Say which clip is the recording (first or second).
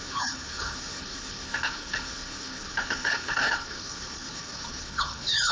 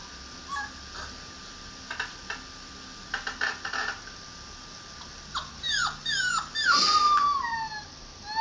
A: second